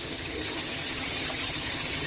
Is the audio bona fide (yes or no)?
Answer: no